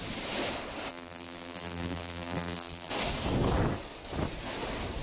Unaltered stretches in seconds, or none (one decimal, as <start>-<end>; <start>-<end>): 0.0-0.9; 2.9-5.0